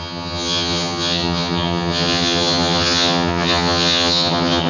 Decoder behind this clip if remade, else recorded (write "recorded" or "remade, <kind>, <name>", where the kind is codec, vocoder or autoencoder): remade, vocoder, HiFi-GAN